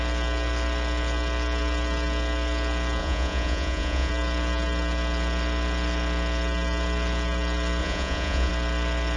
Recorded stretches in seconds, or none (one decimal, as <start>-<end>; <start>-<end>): 0.0-3.0; 4.1-7.8; 8.5-9.2